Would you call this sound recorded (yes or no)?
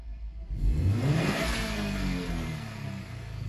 no